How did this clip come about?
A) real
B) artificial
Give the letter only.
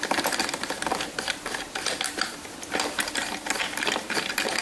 A